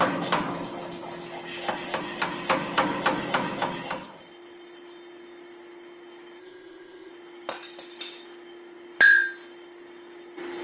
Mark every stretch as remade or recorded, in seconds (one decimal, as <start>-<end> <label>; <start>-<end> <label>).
0.0-6.4 recorded; 6.4-7.1 remade; 7.1-10.6 recorded